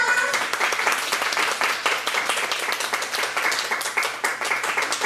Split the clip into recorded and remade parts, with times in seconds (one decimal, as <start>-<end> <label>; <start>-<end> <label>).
0.0-5.1 recorded